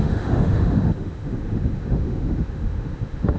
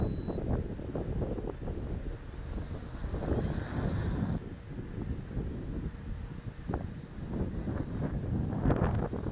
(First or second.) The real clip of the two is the second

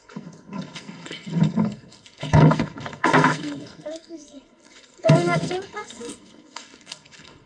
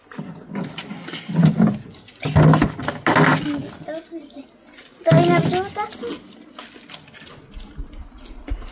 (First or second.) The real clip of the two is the second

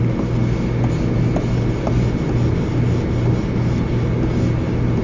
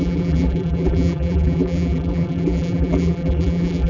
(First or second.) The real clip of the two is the first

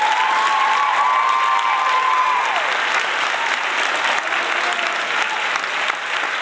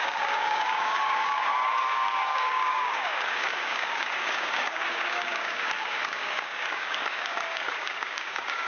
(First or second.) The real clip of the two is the first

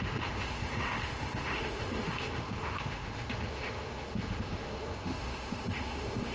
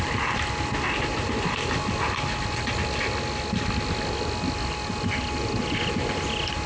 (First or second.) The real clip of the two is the second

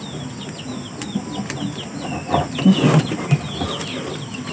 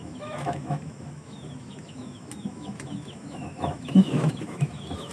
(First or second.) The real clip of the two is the first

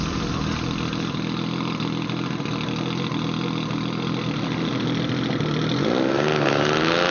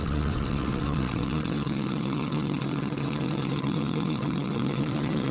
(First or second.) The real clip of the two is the first